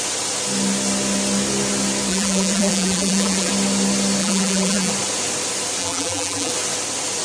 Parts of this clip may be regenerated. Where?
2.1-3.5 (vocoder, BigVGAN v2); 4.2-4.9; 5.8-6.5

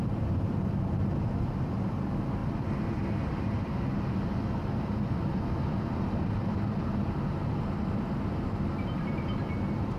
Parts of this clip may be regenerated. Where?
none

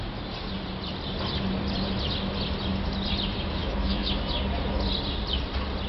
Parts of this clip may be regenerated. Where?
3.6-4.1 (autoencoder, DAC-VAE)